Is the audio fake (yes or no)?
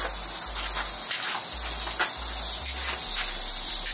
no